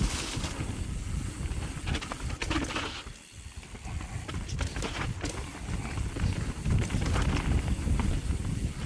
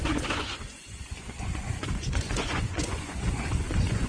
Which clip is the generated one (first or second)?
second